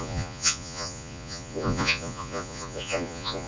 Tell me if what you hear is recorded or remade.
remade